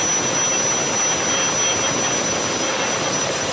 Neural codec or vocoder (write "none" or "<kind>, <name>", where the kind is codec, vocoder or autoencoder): none